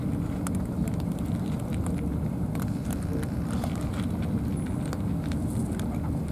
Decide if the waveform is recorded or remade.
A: recorded